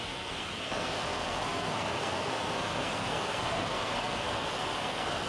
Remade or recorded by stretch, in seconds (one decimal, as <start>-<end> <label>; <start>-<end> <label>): 0.0-5.3 remade